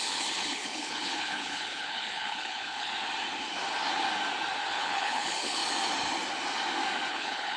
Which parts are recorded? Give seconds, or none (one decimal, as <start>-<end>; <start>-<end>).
2.9-4.7; 5.6-7.1